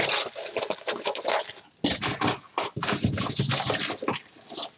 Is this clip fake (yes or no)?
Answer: no